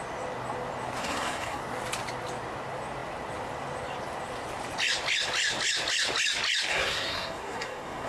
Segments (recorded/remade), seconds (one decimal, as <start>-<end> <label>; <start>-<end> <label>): 0.0-1.0 recorded; 1.0-1.6 remade; 1.6-6.7 recorded; 6.7-8.1 remade